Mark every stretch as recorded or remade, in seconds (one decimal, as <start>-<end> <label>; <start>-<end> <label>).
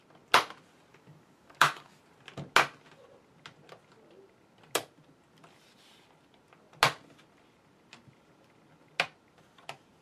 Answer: 0.0-0.9 recorded; 0.9-2.0 remade; 2.0-10.0 recorded